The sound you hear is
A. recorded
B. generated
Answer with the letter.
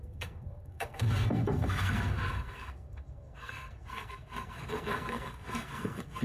B